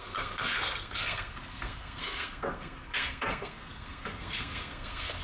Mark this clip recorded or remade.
remade